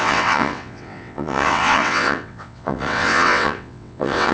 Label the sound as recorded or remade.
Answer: remade